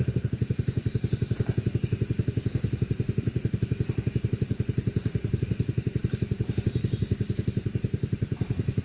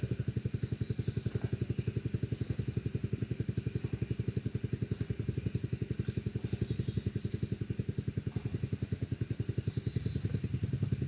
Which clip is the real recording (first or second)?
second